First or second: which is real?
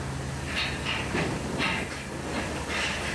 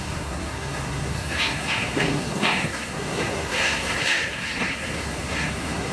first